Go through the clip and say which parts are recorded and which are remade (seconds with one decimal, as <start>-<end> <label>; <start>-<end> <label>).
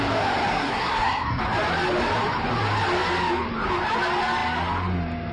0.0-0.5 recorded; 0.5-1.4 remade; 1.4-5.3 recorded